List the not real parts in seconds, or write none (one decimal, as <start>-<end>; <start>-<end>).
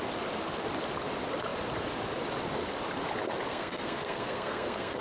3.5-5.0